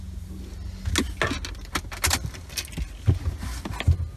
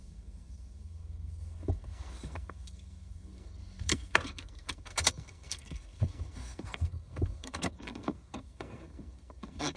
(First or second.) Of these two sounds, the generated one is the second